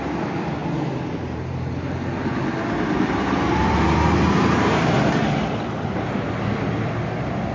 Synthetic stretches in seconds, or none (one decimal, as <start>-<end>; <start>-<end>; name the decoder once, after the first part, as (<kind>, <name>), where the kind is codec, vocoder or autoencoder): none